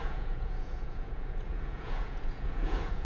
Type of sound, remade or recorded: remade